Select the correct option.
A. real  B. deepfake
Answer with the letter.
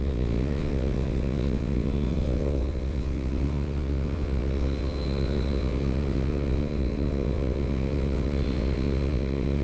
B